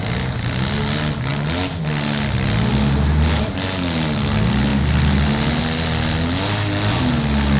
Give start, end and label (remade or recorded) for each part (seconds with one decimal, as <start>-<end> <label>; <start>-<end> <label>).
0.0-7.6 recorded